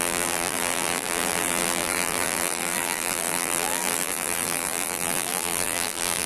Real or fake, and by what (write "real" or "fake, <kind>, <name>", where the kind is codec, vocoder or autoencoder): fake, vocoder, BigVGAN v2